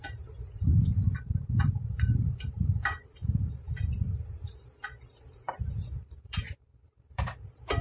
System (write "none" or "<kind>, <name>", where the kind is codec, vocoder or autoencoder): vocoder, BigVGAN v2